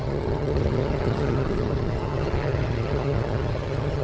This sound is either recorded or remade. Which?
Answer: remade